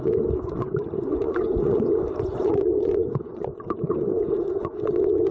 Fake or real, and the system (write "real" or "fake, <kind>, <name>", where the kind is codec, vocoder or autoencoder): fake, vocoder, Vocos